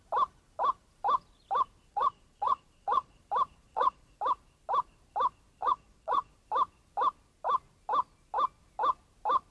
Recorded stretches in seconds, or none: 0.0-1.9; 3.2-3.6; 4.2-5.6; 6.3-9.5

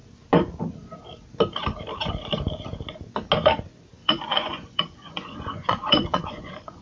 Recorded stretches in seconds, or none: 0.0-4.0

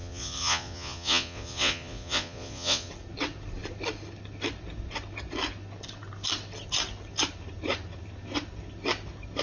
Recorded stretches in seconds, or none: 2.9-9.4